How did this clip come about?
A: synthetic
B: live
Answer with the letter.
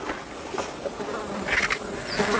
B